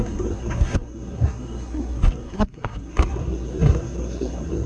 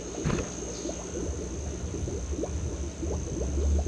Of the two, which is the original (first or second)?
second